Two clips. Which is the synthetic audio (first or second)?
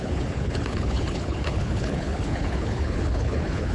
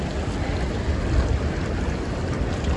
first